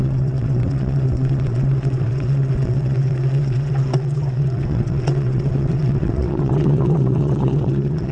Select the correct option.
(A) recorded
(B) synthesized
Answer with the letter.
B